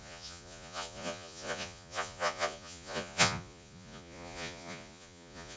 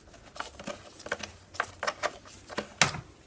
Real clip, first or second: second